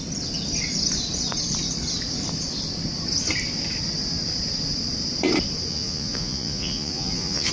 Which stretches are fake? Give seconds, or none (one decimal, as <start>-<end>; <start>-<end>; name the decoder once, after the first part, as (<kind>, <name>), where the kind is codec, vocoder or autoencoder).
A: 5.7-7.5 (vocoder, Vocos)